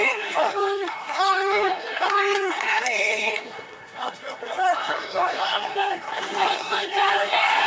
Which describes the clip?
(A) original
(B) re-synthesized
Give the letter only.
B